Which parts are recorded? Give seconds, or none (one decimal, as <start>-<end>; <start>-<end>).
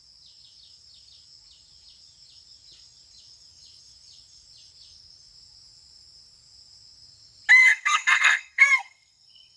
0.0-7.6